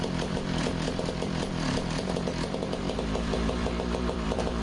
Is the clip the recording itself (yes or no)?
no